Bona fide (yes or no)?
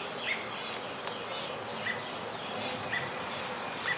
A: yes